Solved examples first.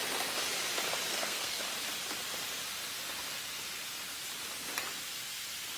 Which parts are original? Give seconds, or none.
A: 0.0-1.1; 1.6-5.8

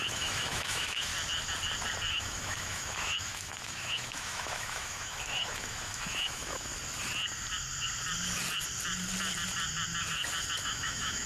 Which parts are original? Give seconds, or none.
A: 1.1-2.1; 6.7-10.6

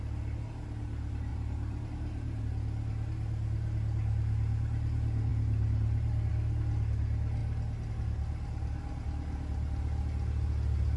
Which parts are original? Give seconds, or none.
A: 0.0-1.3; 2.4-11.0

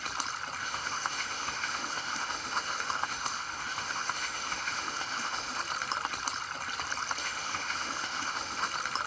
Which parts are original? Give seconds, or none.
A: 0.0-0.6; 5.6-7.2; 8.7-9.1

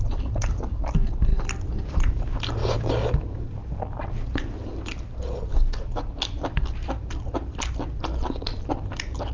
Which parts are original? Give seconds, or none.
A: 0.0-9.3

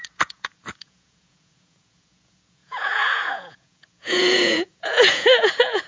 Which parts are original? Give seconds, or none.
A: none

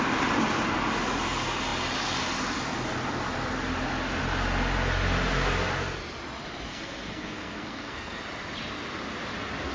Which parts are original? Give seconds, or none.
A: 0.0-6.7; 8.2-9.7